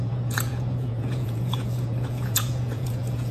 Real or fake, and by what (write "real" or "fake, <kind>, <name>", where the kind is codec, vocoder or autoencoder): fake, vocoder, Vocos